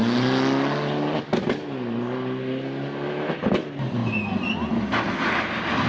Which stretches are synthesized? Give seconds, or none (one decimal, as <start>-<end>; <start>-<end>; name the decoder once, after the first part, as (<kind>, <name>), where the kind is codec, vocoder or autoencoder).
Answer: none